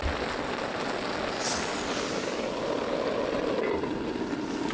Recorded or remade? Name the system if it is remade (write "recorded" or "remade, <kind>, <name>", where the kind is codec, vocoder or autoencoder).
recorded